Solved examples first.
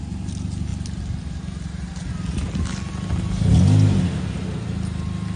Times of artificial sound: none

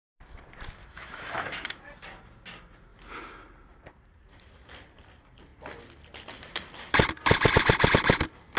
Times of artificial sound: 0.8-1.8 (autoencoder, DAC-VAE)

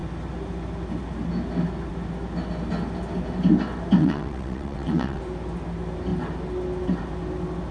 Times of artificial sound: 4.0-5.2 (vocoder, WaveNeXt)